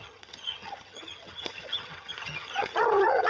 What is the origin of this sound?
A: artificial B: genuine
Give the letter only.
A